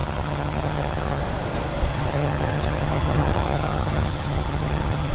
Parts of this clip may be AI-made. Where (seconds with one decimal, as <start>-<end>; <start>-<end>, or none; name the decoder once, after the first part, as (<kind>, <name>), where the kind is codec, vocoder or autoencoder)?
0.0-1.2 (vocoder, HiFi-GAN); 1.9-5.1